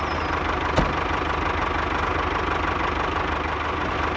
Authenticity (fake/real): real